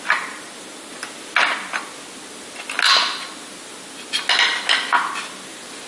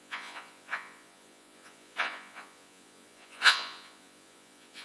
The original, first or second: first